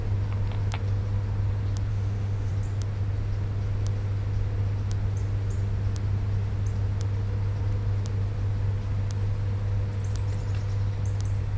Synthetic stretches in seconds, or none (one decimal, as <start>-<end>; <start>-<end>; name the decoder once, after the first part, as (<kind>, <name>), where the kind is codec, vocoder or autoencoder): 1.9-2.5 (autoencoder, DAC-VAE)